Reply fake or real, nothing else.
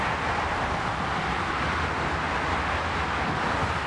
real